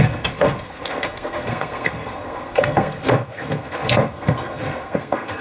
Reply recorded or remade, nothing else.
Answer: remade